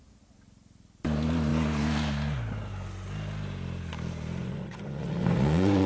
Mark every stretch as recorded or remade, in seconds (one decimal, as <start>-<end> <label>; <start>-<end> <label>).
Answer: 0.0-4.4 recorded; 4.4-5.9 remade